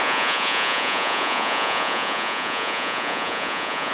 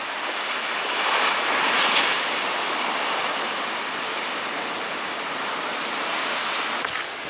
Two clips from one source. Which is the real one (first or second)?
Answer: second